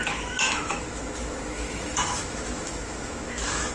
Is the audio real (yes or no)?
no